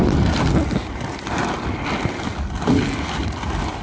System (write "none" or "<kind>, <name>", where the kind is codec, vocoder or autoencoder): none